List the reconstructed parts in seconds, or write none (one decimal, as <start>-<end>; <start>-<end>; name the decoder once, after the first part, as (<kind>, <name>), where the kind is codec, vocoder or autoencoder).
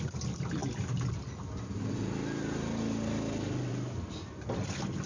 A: none